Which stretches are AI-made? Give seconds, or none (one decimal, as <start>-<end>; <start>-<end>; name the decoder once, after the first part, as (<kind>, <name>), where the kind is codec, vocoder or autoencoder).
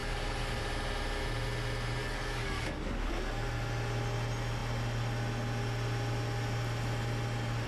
0.0-0.6 (codec, DAC); 2.0-3.1